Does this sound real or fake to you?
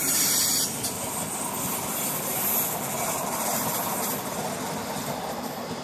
fake